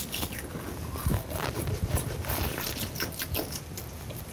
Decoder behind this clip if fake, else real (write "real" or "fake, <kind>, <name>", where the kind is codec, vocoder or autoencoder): real